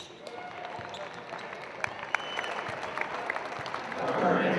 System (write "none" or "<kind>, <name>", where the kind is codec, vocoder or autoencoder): none